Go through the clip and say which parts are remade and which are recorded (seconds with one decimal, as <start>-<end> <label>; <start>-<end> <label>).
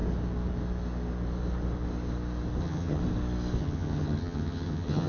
0.0-2.6 recorded; 2.6-3.0 remade; 3.0-3.6 recorded; 3.6-5.1 remade